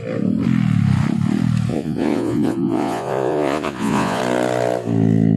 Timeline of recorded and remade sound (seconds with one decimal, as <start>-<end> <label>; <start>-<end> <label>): 0.0-1.7 recorded; 1.7-4.2 remade; 4.2-5.4 recorded